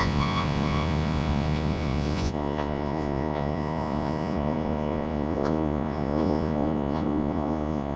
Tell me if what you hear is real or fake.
fake